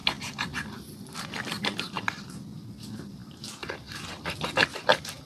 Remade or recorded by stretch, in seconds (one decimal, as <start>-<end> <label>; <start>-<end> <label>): 0.0-1.2 recorded; 1.2-5.3 remade